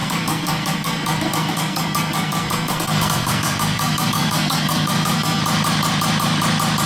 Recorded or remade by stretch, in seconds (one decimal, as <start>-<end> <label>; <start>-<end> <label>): 0.0-5.4 remade; 5.4-6.9 recorded